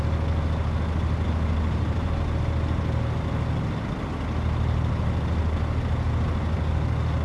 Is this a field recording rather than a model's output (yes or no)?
yes